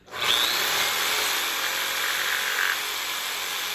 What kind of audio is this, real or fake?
real